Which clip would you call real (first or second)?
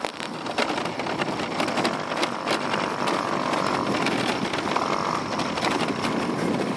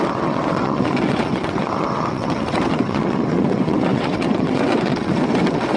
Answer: first